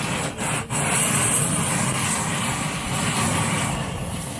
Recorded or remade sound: recorded